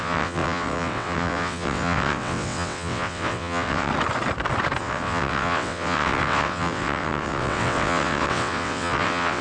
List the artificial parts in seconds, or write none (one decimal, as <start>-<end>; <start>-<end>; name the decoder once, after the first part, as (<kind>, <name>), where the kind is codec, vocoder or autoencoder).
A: 0.0-3.9 (vocoder, WaveNeXt); 4.8-9.4